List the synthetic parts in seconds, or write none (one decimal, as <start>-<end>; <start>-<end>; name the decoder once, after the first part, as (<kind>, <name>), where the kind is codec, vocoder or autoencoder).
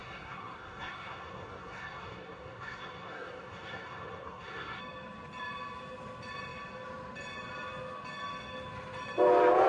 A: 0.0-4.8 (codec, SNAC)